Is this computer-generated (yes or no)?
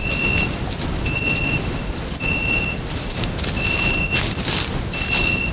no